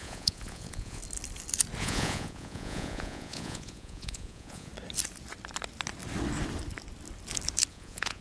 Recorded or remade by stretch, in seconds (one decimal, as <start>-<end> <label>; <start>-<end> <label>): 0.0-1.0 remade; 1.0-1.8 recorded; 1.8-4.7 remade; 4.7-7.7 recorded; 7.7-8.2 remade